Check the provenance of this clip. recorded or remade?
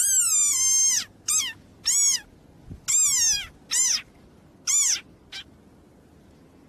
recorded